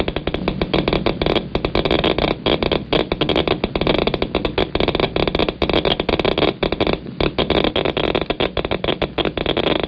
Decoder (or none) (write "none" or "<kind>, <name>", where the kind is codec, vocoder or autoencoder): none